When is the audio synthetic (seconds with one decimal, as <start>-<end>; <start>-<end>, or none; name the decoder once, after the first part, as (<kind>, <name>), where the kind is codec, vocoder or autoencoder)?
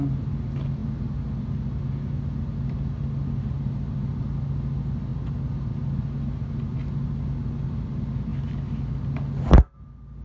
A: none